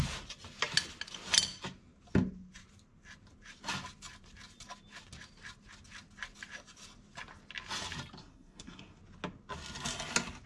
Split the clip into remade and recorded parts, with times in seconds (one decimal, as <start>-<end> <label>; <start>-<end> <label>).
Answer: 0.0-8.2 recorded; 8.2-9.0 remade; 9.0-10.5 recorded